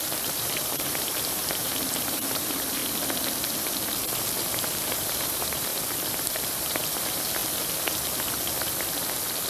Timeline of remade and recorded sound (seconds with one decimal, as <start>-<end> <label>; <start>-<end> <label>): 0.0-2.8 remade; 2.8-4.5 recorded; 4.5-5.7 remade; 5.7-6.2 recorded; 6.2-7.4 remade; 7.4-9.5 recorded